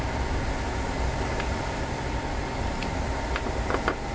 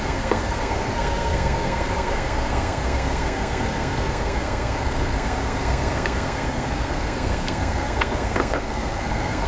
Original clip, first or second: first